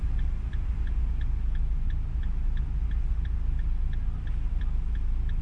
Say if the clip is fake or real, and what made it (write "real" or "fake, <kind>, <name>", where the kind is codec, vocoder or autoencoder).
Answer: real